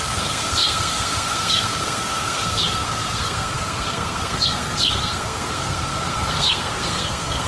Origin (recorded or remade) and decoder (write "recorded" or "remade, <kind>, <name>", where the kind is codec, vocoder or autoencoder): remade, codec, SNAC